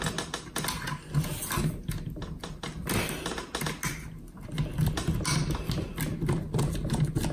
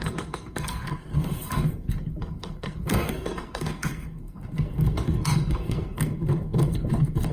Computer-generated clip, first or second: second